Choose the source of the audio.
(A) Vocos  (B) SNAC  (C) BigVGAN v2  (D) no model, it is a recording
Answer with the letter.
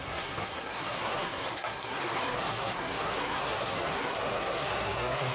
B